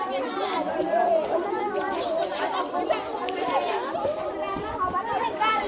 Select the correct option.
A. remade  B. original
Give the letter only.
B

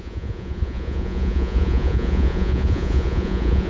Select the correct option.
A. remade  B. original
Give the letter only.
A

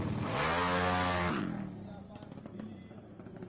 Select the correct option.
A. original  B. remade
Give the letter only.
A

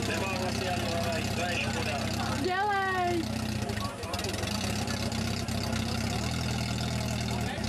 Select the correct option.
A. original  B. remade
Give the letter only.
A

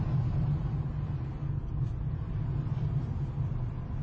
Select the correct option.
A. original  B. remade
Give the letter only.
A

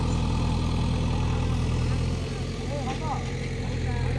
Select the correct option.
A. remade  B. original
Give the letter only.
B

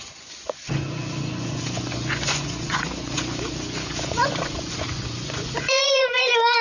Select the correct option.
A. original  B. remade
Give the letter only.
B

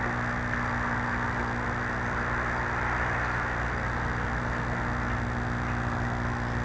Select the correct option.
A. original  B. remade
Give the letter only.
A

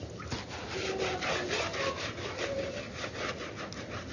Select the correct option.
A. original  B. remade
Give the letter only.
A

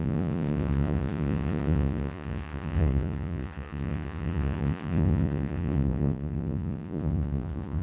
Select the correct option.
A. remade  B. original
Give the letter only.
A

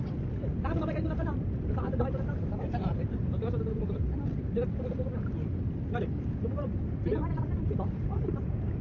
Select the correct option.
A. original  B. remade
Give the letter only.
A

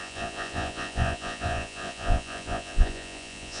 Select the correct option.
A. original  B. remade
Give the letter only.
B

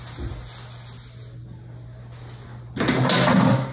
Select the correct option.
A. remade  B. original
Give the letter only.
B